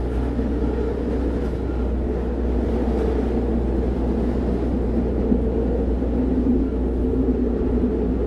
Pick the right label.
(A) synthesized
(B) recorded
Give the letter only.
B